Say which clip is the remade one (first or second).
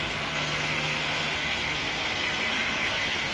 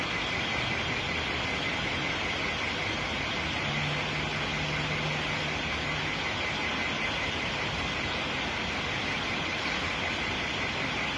first